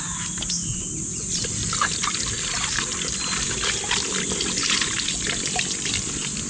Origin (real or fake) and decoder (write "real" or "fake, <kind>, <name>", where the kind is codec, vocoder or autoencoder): real